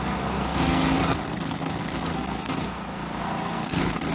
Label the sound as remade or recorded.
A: remade